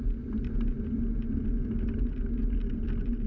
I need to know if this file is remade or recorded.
recorded